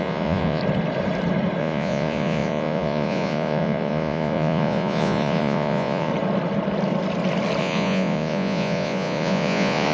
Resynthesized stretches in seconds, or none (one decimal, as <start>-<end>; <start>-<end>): 0.0-0.6; 1.6-6.1; 7.6-9.9